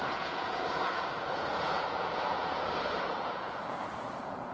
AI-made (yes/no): yes